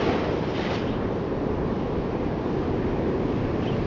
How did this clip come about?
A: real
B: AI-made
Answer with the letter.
A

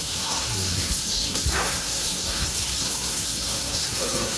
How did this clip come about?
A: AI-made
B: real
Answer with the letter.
A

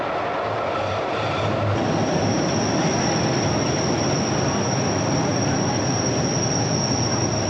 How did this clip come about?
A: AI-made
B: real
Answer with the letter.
B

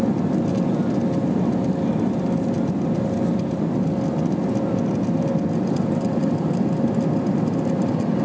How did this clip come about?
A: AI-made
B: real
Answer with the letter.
B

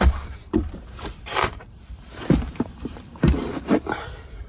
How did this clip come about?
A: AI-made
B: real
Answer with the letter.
A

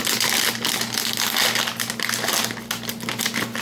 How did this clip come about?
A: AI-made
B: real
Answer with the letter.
B